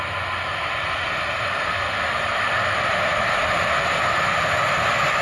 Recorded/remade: recorded